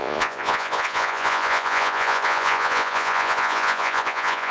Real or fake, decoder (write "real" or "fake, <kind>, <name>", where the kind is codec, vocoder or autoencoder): fake, vocoder, Vocos